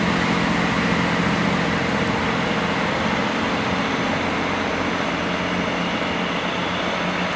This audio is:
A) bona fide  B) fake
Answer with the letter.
A